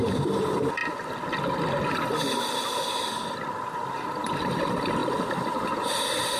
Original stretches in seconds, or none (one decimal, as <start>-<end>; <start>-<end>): 0.8-3.9; 5.0-6.0

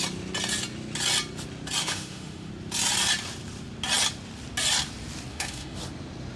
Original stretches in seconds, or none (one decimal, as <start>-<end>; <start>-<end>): 0.0-1.8; 2.5-5.3; 5.8-6.4

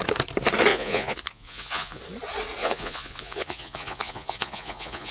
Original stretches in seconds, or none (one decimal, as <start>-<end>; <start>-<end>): 0.0-0.7; 2.0-2.6

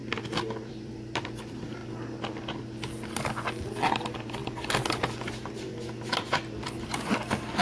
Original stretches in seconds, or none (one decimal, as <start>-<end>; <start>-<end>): 0.0-0.6; 1.8-3.9; 4.4-5.3; 5.7-6.2

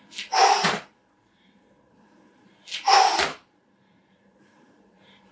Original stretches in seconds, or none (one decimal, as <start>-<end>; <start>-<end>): 2.5-3.6

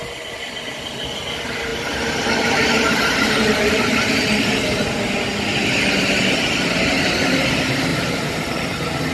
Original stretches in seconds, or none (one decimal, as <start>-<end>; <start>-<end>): 0.0-1.7; 4.9-7.9

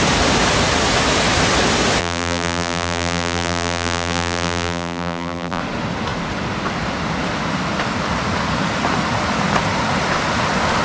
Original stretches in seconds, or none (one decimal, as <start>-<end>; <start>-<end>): 0.0-2.0; 5.6-10.8